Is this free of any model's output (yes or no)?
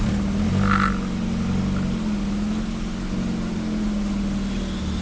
yes